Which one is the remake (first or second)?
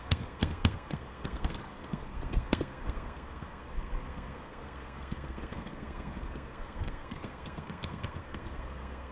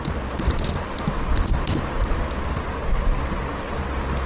first